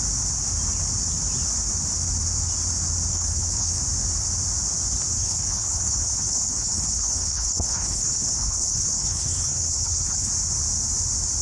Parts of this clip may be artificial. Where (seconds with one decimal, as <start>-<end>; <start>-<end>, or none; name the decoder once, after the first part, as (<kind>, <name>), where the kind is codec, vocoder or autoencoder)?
3.1-3.8 (codec, HILCodec); 5.1-10.3